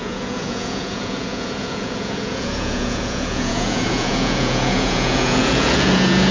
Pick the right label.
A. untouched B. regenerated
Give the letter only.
B